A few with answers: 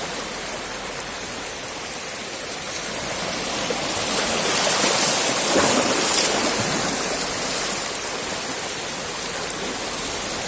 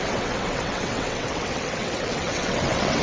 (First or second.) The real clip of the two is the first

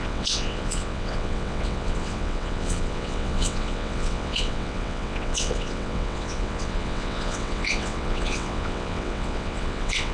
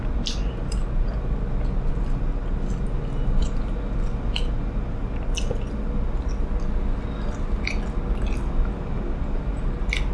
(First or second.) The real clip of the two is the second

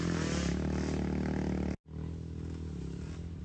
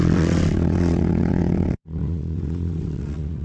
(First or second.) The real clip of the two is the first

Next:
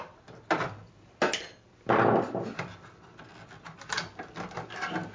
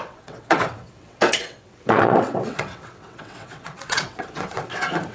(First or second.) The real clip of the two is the first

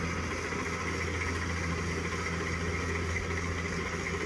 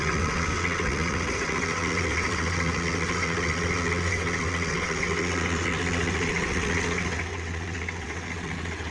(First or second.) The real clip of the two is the first